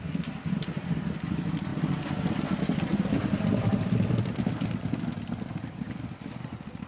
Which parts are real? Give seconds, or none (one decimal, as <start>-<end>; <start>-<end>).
0.0-6.9